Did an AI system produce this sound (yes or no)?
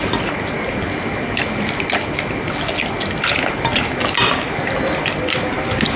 no